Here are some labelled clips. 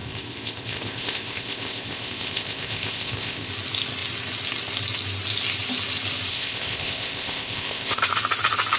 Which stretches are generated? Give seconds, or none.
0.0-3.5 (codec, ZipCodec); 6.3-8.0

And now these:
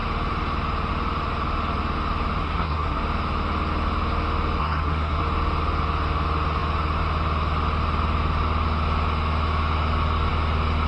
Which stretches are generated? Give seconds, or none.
2.4-3.0 (codec, SNAC); 4.6-5.2

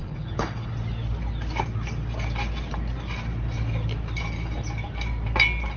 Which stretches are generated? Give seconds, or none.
0.0-0.7 (codec, HILCodec)

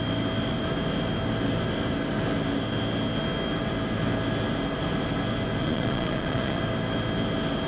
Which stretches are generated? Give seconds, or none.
5.6-6.6 (vocoder, Vocos)